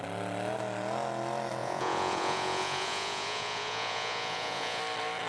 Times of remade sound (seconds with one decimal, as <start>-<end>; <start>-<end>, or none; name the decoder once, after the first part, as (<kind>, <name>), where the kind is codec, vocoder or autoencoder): 1.6-4.8 (vocoder, Vocos)